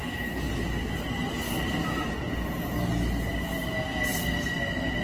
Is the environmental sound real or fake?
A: real